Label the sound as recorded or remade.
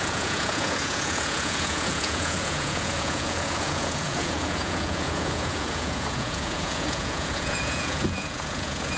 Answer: remade